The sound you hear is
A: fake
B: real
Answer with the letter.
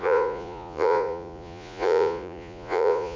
A